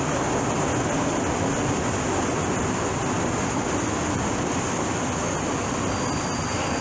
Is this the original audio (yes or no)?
yes